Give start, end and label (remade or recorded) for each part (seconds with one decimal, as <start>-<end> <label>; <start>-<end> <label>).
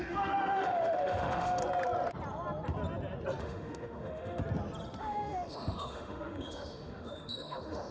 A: 0.0-1.6 remade; 1.6-3.4 recorded; 3.4-4.4 remade; 4.4-5.0 recorded; 5.0-7.9 remade